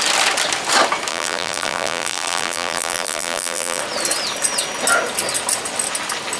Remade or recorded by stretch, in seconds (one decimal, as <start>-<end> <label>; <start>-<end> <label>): 0.0-1.1 recorded; 1.1-3.8 remade; 3.8-6.4 recorded